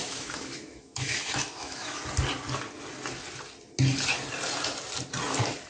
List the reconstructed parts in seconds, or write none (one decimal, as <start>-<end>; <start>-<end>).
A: 0.0-2.0